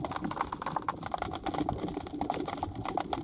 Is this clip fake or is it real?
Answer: real